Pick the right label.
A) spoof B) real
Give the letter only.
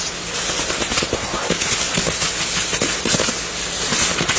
B